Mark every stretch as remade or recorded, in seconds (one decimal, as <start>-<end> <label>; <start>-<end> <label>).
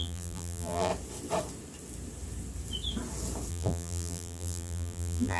0.0-0.9 remade; 0.9-3.5 recorded; 3.5-5.4 remade